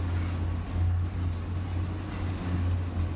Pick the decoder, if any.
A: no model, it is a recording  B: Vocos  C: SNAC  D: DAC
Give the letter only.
A